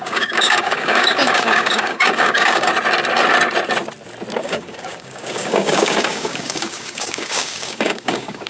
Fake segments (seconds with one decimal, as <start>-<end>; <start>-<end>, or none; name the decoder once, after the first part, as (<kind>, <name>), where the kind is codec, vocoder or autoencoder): 0.0-2.7 (codec, DAC); 4.4-8.5